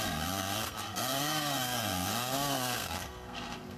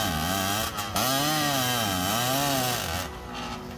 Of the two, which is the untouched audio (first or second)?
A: second